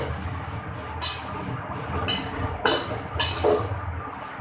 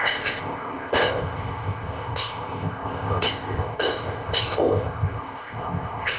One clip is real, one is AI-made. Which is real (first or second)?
first